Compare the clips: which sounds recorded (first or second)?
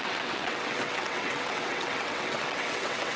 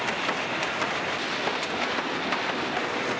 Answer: second